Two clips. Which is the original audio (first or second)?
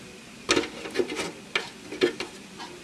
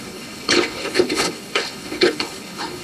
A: first